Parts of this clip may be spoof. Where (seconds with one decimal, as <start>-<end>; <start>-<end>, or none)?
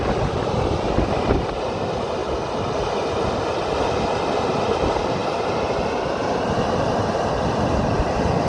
none